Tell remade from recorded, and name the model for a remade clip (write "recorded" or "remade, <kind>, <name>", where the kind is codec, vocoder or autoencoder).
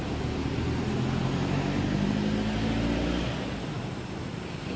recorded